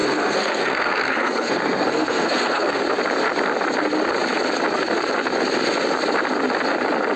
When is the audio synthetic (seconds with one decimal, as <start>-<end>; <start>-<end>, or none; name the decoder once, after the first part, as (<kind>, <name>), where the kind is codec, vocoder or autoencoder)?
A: 0.0-2.8 (codec, SNAC)